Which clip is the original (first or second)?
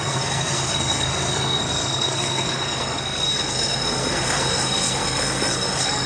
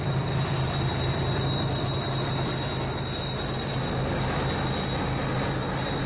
second